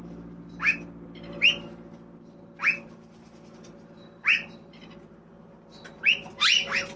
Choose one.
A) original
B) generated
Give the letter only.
A